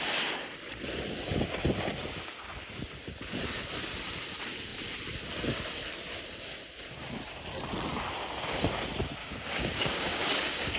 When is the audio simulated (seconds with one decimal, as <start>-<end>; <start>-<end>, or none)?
9.2-10.8